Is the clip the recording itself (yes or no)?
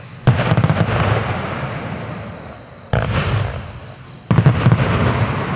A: yes